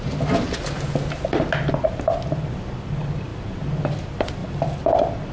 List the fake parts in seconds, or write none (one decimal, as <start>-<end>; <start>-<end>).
3.3-4.0